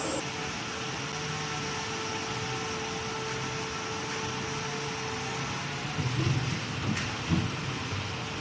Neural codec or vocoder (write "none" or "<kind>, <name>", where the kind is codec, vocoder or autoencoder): none